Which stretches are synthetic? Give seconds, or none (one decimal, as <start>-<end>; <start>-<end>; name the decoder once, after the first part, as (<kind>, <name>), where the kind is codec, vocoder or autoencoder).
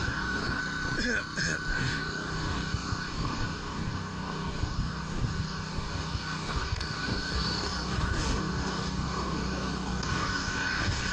0.0-0.6 (codec, DAC); 1.7-11.1